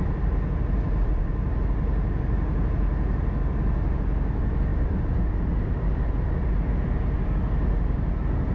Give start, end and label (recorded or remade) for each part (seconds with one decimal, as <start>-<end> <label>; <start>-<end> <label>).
0.0-8.5 recorded